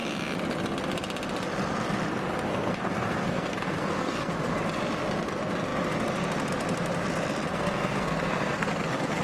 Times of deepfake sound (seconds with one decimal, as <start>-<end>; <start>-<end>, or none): 2.5-4.3; 7.5-9.2